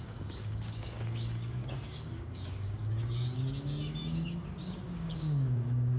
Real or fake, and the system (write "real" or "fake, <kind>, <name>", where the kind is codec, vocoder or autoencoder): fake, codec, DAC